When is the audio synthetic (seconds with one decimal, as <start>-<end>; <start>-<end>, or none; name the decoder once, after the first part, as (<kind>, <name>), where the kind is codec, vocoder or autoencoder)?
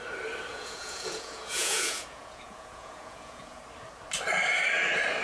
0.5-3.6 (vocoder, Vocos)